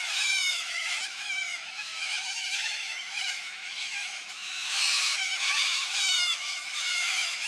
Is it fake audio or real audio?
fake